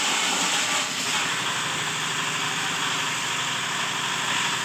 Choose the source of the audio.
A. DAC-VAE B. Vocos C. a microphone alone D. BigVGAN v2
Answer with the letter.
C